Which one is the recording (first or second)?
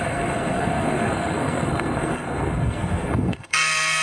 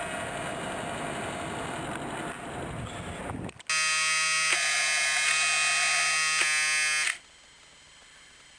second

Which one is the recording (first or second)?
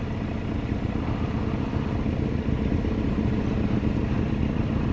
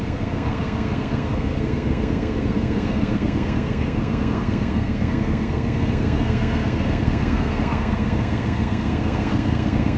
first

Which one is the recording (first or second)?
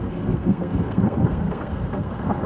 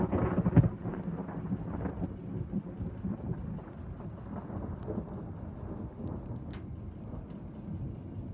second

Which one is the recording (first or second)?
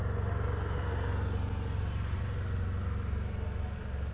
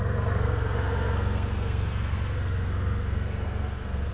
first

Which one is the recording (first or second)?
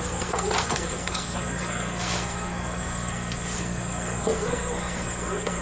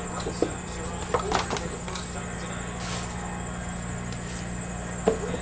second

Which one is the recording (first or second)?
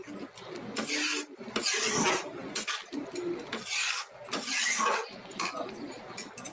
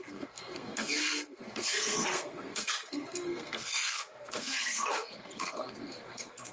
first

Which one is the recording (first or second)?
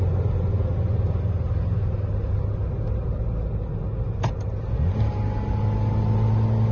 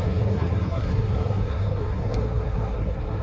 first